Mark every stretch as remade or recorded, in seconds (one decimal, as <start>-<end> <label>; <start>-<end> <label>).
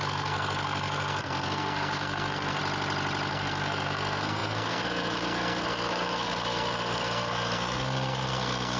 0.0-2.6 remade; 2.6-3.3 recorded; 3.3-8.8 remade